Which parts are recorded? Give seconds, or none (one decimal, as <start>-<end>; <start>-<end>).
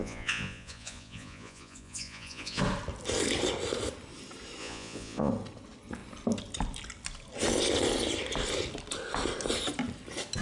2.6-4.6; 5.3-10.4